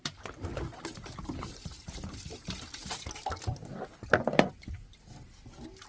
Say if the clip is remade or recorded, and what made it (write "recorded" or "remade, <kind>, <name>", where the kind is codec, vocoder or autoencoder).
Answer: recorded